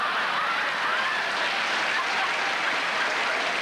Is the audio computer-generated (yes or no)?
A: no